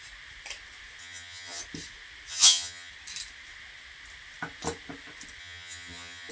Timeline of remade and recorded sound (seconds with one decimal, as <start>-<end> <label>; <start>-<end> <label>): 0.0-1.0 recorded; 1.0-1.6 remade; 1.6-2.3 recorded; 2.3-2.9 remade; 2.9-5.4 recorded; 5.4-6.3 remade